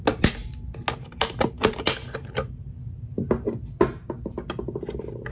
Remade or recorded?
recorded